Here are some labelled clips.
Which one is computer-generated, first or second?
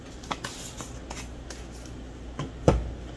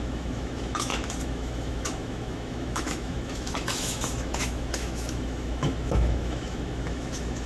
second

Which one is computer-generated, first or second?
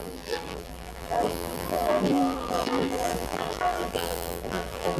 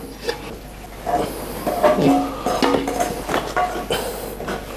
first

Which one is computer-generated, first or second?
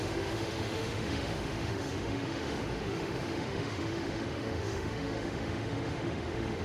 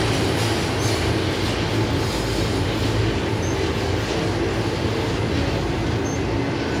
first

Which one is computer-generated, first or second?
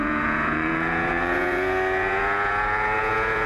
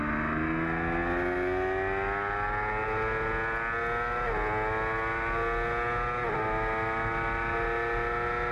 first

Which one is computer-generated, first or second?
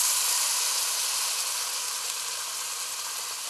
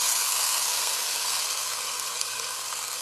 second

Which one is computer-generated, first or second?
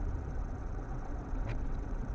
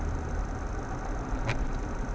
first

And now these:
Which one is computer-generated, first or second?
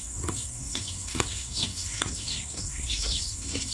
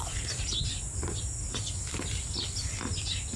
first